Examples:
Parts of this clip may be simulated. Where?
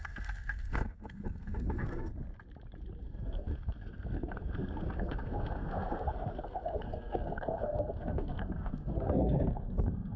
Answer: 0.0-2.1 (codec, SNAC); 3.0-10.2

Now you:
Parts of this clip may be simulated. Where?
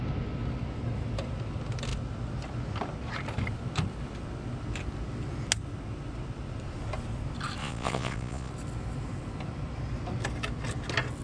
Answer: 7.6-8.5 (vocoder, Vocos)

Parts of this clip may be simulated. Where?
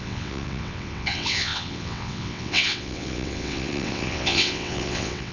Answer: 0.0-5.3 (vocoder, WaveNeXt)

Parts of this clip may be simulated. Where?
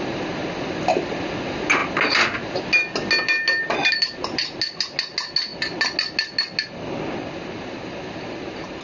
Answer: none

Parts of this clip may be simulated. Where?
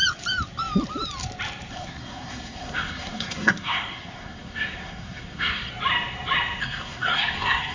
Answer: 1.7-5.7 (codec, SNAC); 6.6-7.7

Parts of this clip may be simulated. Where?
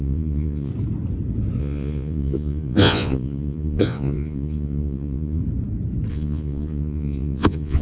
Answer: 0.0-0.7 (vocoder, Vocos); 1.6-5.4; 6.1-7.8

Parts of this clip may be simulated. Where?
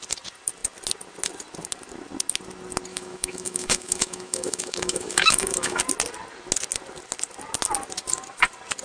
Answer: 2.9-5.8 (autoencoder, DAC-VAE)